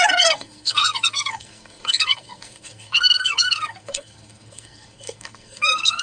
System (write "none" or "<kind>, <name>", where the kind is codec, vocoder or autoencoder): codec, SNAC